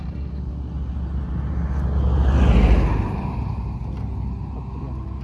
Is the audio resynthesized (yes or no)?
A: no